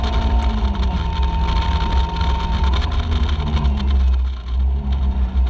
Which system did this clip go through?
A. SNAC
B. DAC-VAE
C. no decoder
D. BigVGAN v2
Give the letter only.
C